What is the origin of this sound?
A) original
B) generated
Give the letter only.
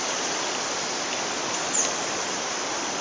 A